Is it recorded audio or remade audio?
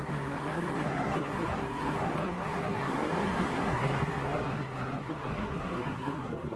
remade